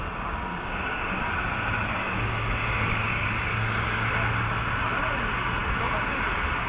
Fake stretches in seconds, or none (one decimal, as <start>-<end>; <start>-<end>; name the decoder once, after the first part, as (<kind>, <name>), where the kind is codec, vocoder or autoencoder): 0.5-1.3 (codec, DAC); 1.9-3.1; 3.5-4.1